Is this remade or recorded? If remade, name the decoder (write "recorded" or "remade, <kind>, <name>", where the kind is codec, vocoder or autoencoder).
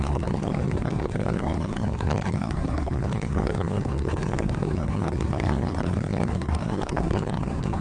remade, codec, SNAC